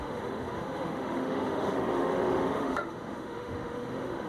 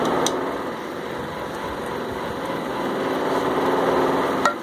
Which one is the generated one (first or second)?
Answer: first